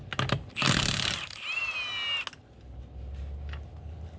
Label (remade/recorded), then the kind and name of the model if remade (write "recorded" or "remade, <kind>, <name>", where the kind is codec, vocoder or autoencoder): recorded